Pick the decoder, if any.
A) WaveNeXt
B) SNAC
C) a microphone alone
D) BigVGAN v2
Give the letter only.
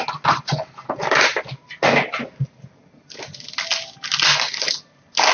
C